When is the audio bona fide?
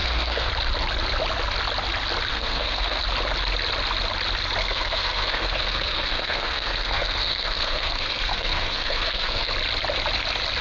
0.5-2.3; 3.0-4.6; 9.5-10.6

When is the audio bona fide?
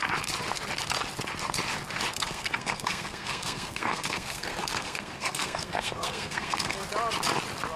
0.0-2.1; 6.8-7.8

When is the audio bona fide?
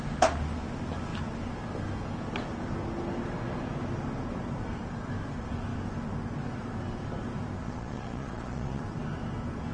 0.0-7.6; 8.8-9.7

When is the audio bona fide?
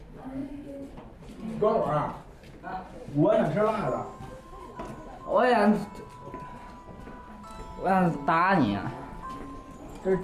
0.0-0.4; 1.4-5.8; 6.7-10.2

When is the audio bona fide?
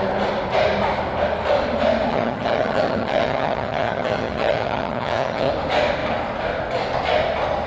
0.0-2.1; 5.5-7.7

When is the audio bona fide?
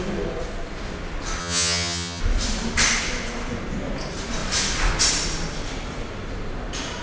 0.0-1.4; 2.2-7.0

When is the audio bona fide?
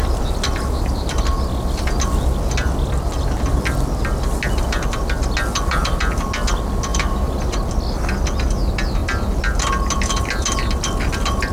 0.0-6.9; 7.5-11.5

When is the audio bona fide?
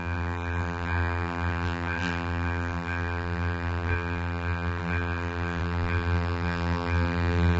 none